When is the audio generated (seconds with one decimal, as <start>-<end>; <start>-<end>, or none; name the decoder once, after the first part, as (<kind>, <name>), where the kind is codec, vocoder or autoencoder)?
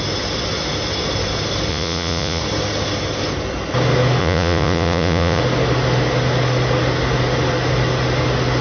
1.7-2.4 (vocoder, Vocos); 4.2-5.4